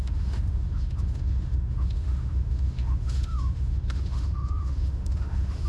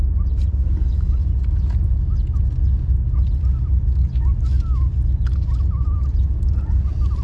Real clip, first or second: second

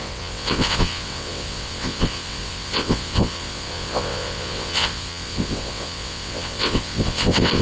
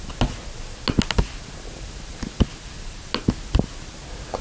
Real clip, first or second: second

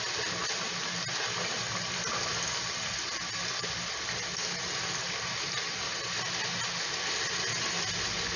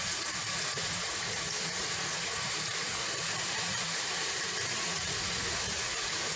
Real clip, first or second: first